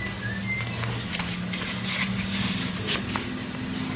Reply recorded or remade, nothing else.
recorded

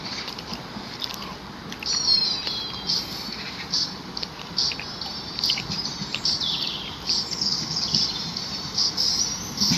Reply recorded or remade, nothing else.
recorded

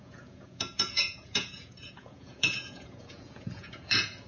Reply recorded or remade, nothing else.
remade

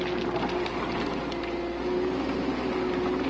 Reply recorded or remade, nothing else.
recorded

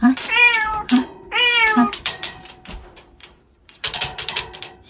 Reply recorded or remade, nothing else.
remade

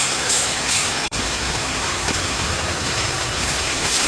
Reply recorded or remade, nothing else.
remade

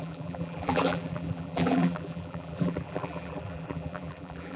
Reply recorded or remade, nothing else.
remade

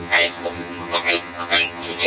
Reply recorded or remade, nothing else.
remade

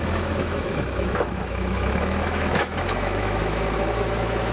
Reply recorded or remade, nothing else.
remade